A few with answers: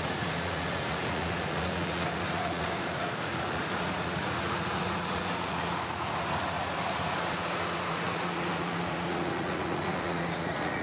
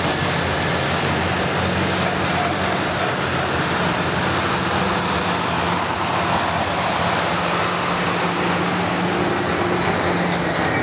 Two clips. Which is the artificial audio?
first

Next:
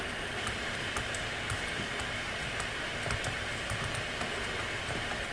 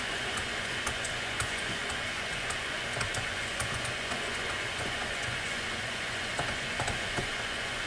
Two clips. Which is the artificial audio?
second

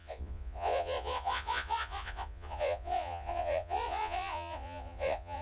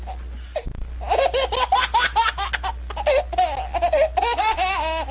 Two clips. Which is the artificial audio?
first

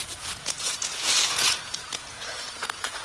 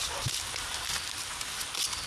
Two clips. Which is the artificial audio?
first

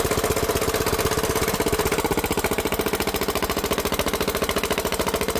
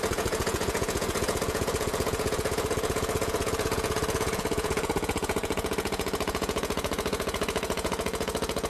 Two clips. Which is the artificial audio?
second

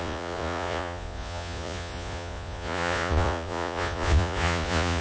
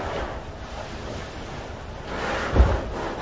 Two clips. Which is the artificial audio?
first